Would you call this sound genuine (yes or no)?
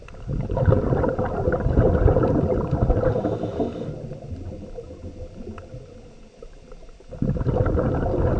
yes